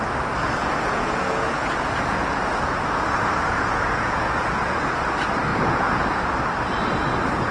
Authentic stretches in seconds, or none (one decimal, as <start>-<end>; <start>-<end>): 0.0-0.6; 5.0-5.5; 6.2-7.5